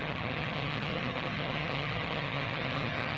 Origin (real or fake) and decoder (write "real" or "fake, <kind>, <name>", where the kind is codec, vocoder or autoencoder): fake, vocoder, HiFi-GAN